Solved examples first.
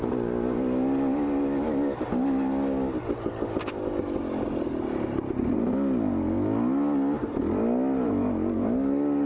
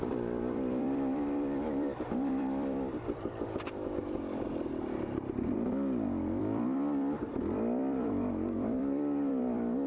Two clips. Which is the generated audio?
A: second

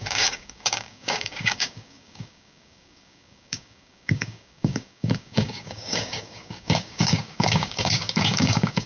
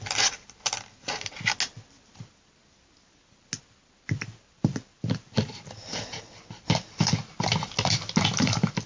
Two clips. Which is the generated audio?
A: first